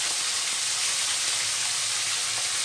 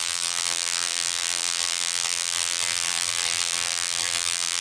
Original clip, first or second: first